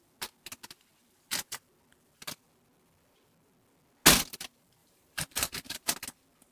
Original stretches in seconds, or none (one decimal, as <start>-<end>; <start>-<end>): 0.0-4.8; 5.9-6.5